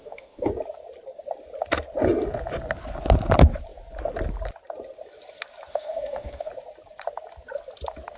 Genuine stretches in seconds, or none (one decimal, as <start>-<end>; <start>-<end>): 0.5-5.7; 6.5-8.2